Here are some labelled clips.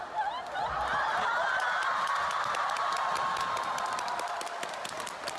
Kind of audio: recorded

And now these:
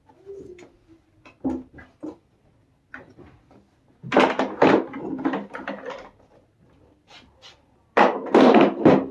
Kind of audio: recorded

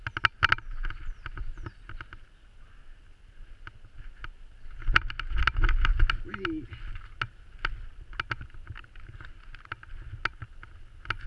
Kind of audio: recorded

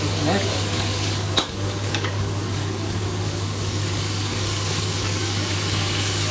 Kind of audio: remade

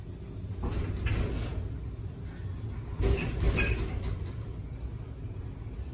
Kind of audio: recorded